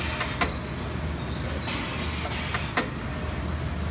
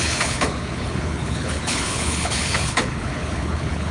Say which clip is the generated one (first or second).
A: second